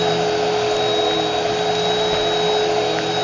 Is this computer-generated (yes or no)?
no